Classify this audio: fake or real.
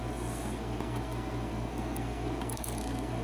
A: fake